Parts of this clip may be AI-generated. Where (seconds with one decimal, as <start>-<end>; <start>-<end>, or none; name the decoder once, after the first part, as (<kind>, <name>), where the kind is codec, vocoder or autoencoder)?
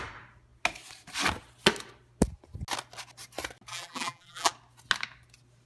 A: 3.7-4.5 (vocoder, BigVGAN v2)